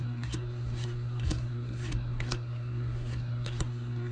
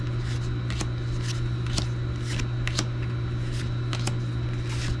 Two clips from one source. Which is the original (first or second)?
second